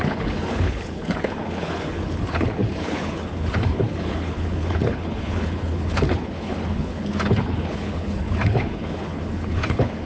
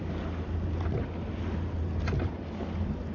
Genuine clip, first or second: second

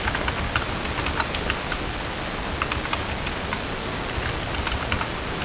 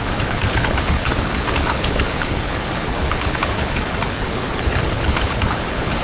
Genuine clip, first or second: first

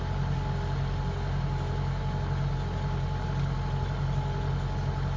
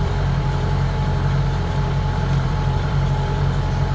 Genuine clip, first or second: first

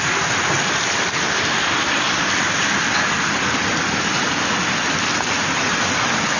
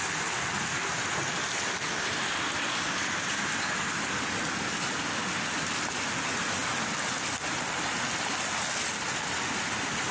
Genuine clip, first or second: second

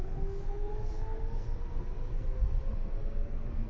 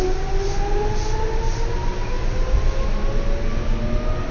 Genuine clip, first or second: second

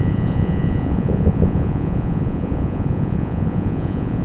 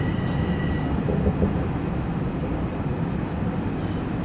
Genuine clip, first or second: second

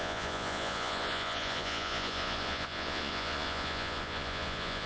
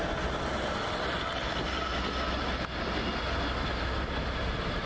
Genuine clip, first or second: second